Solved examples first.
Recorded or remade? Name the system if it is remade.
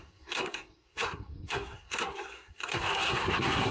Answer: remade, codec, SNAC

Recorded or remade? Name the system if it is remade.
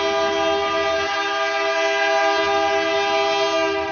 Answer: recorded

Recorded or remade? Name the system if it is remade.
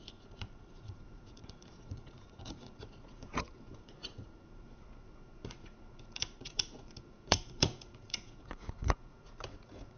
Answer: remade, vocoder, Vocos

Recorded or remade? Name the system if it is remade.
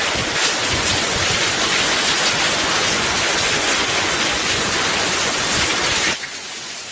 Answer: remade, vocoder, Vocos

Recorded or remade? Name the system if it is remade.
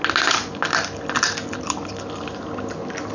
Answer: recorded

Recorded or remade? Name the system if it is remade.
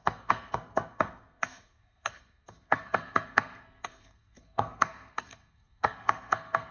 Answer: remade, codec, SNAC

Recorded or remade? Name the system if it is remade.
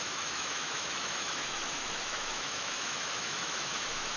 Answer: remade, autoencoder, DAC-VAE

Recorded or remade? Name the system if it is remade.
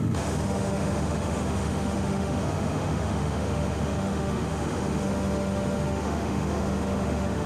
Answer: remade, autoencoder, DAC-VAE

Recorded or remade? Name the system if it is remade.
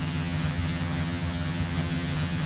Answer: remade, vocoder, HiFi-GAN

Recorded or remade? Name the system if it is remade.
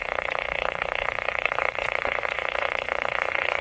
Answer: remade, vocoder, Vocos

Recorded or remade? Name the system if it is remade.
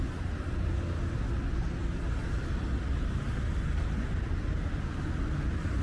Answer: recorded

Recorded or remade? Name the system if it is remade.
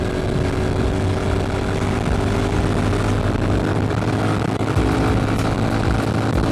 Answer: recorded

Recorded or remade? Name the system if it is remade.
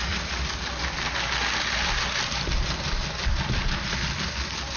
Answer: recorded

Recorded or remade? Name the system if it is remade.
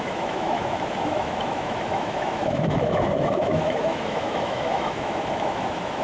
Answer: remade, autoencoder, DAC-VAE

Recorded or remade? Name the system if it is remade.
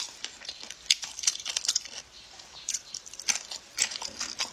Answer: remade, vocoder, BigVGAN v2